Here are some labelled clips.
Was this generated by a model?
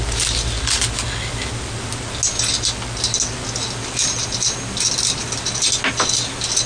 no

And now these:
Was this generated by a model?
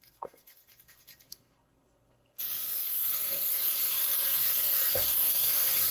yes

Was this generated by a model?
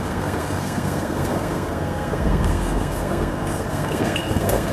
yes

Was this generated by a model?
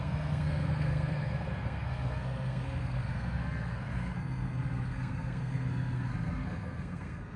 yes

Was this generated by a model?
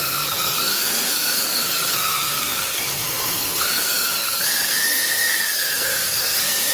yes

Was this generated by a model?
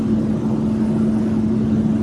no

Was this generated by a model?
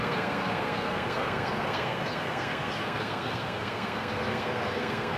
yes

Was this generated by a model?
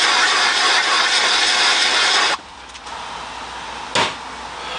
no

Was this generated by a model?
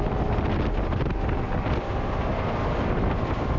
no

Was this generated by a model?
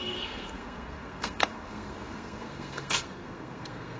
yes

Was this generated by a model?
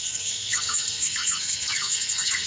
yes